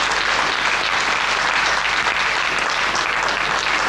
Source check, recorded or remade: recorded